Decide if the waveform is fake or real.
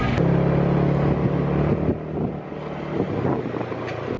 real